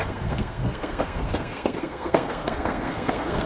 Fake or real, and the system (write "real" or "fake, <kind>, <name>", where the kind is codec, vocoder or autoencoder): fake, codec, SNAC